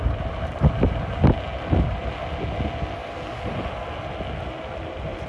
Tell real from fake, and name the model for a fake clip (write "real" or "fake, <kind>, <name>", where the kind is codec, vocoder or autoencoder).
real